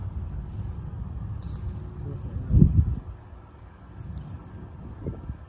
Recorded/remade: recorded